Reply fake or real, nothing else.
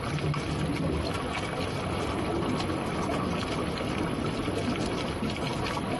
real